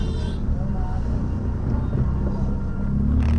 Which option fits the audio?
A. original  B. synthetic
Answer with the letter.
A